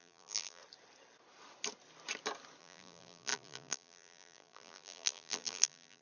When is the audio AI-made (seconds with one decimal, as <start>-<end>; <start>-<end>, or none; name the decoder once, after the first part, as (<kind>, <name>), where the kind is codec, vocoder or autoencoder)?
0.0-0.6 (vocoder, BigVGAN v2); 2.6-6.0